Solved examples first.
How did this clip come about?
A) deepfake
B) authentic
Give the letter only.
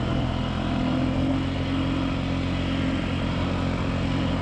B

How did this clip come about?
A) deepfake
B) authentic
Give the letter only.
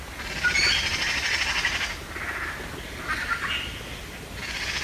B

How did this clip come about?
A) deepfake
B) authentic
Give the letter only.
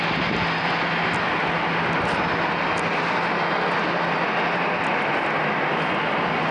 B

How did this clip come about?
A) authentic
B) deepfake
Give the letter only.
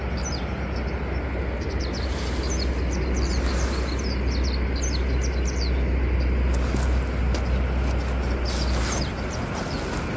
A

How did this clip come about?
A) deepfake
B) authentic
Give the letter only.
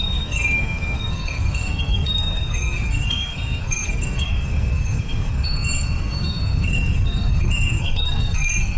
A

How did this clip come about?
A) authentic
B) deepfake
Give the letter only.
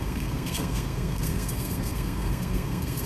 B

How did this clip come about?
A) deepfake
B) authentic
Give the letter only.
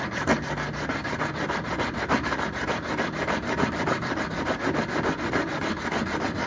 B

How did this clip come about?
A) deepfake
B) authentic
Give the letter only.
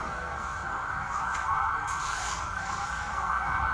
A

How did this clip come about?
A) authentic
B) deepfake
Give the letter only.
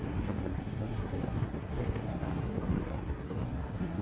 B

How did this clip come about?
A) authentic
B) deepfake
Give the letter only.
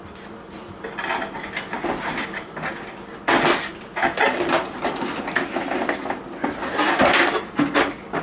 A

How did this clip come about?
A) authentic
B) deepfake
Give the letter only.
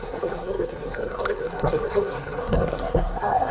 B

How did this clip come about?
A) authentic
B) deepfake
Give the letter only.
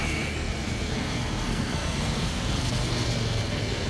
B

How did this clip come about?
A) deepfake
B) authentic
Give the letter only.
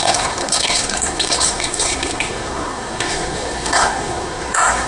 A